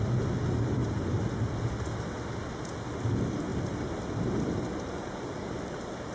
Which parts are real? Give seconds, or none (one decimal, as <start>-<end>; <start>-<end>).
0.0-0.8; 1.6-3.5; 4.7-6.1